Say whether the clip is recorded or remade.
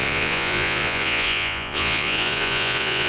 remade